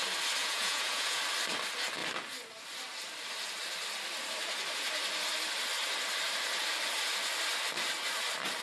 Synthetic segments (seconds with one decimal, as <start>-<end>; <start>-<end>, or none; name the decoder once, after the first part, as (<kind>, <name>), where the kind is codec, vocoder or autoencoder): 0.4-1.2 (vocoder, Vocos)